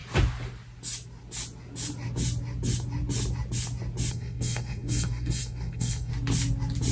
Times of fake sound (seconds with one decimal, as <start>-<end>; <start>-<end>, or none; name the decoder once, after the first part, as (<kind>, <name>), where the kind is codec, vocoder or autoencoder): 4.1-6.1 (codec, SNAC)